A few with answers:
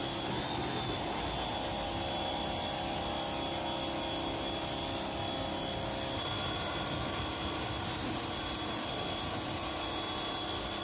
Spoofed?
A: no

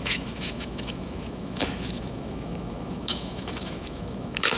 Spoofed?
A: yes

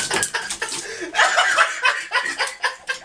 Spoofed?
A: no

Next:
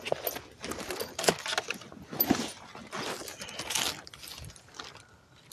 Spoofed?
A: no